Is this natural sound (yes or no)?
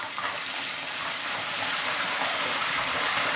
no